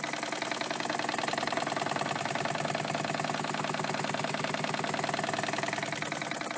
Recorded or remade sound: recorded